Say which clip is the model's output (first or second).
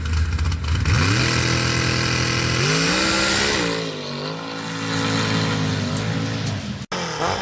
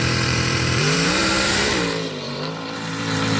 second